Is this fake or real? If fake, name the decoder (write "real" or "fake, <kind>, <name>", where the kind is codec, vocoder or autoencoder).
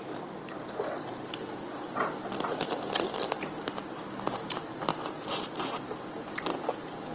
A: real